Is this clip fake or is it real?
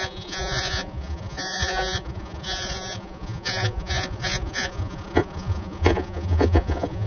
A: fake